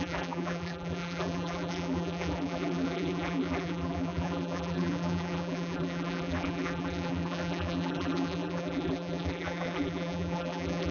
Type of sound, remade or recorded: remade